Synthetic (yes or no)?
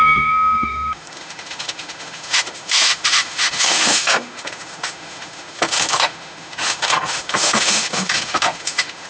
yes